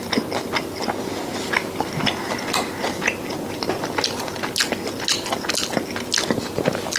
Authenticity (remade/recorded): recorded